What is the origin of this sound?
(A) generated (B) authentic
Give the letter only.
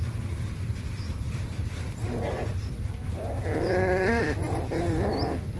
A